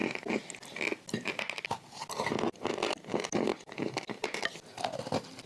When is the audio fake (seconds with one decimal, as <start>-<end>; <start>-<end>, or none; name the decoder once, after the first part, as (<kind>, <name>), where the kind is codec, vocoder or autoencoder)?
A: none